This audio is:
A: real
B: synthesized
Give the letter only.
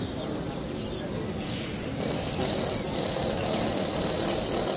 A